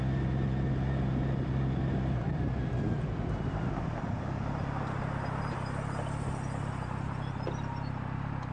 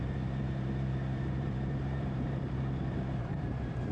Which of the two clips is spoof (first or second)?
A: second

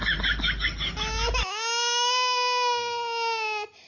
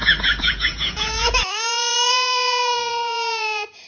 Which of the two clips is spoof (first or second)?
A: second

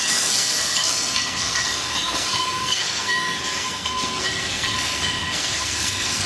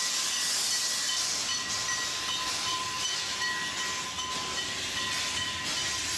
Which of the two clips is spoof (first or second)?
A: first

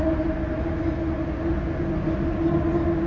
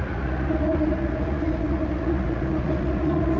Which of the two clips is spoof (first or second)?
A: second